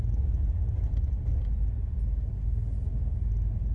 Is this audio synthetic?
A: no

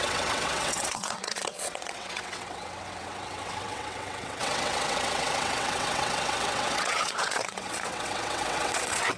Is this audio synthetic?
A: yes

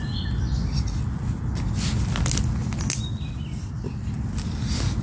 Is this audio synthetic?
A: no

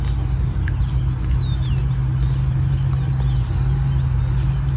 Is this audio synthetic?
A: no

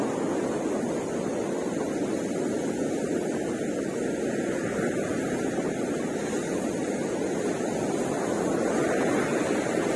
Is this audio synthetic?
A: no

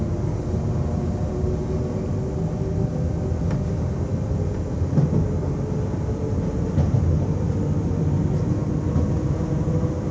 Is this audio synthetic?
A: no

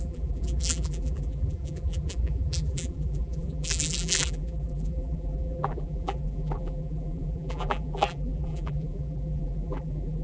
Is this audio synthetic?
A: yes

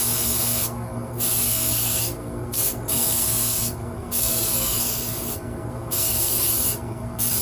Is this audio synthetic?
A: yes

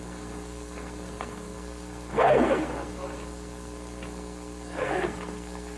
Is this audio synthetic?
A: yes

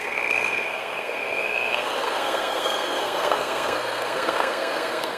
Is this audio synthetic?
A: yes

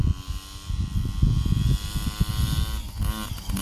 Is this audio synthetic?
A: no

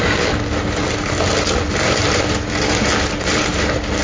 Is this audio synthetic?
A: no